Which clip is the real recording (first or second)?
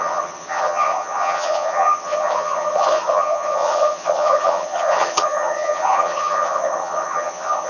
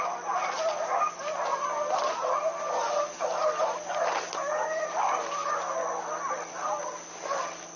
second